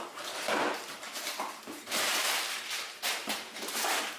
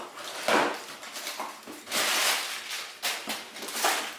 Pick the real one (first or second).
second